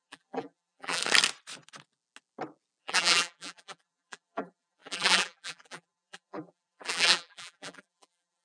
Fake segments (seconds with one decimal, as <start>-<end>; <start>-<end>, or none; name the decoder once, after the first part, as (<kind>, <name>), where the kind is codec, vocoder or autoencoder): 0.0-1.0 (vocoder, BigVGAN v2); 2.8-8.4